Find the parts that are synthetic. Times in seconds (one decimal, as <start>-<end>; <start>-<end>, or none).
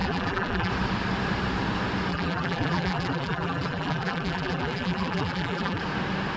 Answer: 0.0-0.7; 2.1-5.8